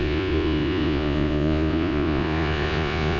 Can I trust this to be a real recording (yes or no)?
no